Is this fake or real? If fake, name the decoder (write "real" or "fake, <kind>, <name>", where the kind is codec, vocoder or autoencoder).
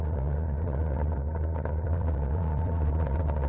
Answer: fake, vocoder, Vocos